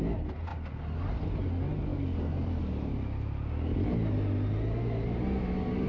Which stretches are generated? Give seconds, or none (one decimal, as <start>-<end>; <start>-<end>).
none